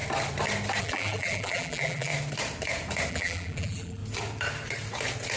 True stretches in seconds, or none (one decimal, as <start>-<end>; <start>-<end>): 0.0-0.8; 2.1-3.1; 4.0-5.4